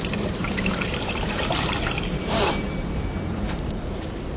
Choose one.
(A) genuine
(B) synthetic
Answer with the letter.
B